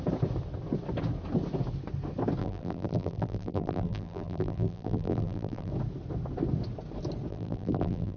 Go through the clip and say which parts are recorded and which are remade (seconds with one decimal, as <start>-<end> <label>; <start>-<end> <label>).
0.0-2.4 recorded; 2.4-5.7 remade; 5.7-7.3 recorded; 7.3-8.2 remade